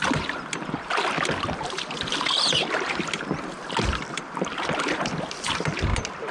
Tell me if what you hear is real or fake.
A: fake